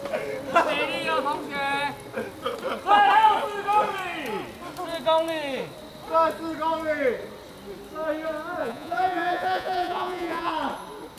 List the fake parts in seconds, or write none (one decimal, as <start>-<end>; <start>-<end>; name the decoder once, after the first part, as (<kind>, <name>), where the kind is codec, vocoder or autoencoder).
8.6-10.5 (vocoder, Vocos)